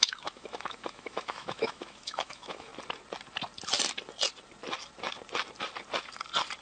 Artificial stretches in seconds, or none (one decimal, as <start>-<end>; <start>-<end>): 0.0-2.7